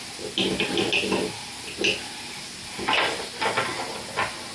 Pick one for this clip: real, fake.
real